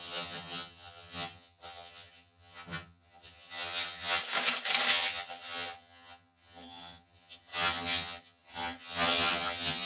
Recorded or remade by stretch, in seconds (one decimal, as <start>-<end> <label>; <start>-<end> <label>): 0.0-4.2 remade; 4.2-4.9 recorded; 4.9-9.9 remade